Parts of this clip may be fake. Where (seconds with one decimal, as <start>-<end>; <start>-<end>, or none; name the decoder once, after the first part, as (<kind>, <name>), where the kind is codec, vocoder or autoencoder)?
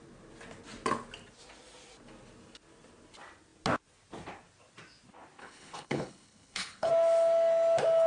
5.4-6.9 (codec, HILCodec)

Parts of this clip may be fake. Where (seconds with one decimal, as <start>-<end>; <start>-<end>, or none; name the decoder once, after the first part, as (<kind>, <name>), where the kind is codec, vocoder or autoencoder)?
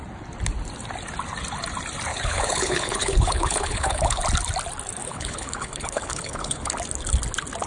2.1-4.2 (codec, HILCodec); 5.0-6.7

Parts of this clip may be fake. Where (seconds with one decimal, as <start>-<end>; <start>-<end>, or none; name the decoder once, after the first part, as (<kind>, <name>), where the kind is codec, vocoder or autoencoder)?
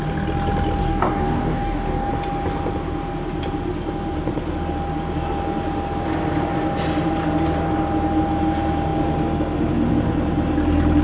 0.8-2.1 (codec, DAC)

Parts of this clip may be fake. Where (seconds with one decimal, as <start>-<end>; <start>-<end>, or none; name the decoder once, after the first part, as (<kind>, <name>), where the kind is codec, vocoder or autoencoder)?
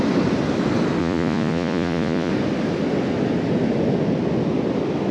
1.0-2.3 (vocoder, Vocos)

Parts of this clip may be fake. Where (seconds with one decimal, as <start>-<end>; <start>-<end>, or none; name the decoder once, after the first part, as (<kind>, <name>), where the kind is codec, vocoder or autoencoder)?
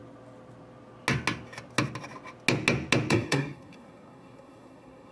3.1-5.1 (codec, SNAC)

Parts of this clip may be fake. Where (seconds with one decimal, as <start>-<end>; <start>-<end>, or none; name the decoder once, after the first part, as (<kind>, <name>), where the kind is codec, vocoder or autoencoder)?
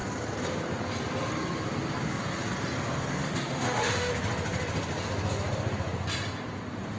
3.2-4.1 (autoencoder, DAC-VAE)